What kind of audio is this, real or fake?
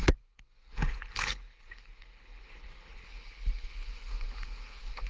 fake